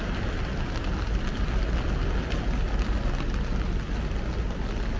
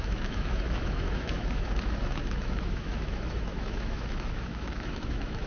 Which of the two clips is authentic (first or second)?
first